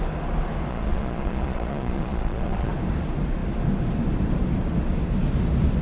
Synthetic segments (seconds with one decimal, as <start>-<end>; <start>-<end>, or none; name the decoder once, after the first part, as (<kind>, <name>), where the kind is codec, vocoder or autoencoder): 0.7-2.7 (vocoder, Vocos)